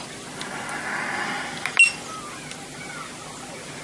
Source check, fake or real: real